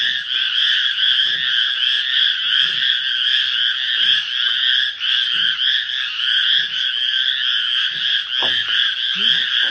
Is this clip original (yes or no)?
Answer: yes